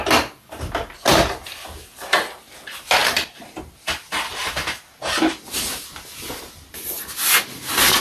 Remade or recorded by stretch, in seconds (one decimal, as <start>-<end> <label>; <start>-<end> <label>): 0.0-3.0 recorded; 3.0-3.6 remade; 3.6-4.4 recorded; 4.4-5.0 remade; 5.0-8.0 recorded